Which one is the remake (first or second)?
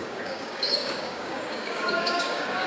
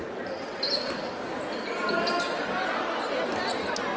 first